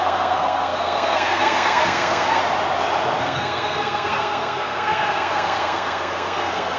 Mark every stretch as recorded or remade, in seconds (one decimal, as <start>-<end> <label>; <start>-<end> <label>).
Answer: 0.0-2.4 remade; 2.4-3.2 recorded; 3.2-6.8 remade